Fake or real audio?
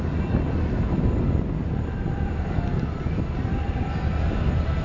real